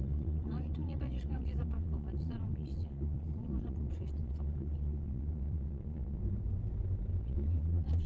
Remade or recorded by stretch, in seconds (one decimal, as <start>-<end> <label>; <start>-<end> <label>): 0.0-6.2 remade; 6.2-7.2 recorded; 7.2-8.1 remade